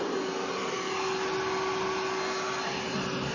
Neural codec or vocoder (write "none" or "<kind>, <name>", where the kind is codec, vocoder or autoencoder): none